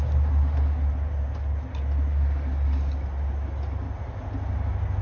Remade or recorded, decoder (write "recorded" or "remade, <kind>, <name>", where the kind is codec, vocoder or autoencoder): recorded